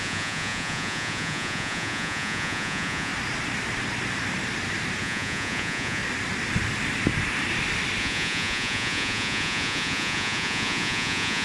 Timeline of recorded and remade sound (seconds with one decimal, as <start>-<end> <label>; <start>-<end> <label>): 0.0-3.1 remade; 3.1-5.0 recorded; 5.0-6.0 remade; 6.0-8.0 recorded; 8.0-11.4 remade